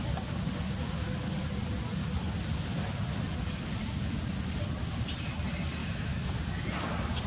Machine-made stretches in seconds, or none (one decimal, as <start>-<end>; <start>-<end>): 5.8-6.4